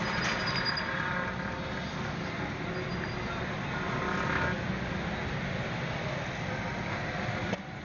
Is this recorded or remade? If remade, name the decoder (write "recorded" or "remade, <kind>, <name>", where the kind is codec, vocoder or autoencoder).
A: recorded